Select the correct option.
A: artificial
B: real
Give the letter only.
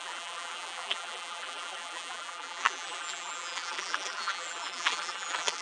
A